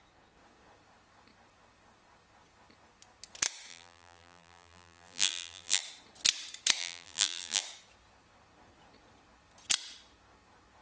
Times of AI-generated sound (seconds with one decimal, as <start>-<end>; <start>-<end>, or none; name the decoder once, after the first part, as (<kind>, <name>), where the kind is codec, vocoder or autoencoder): 3.7-5.8 (vocoder, BigVGAN v2); 6.8-7.6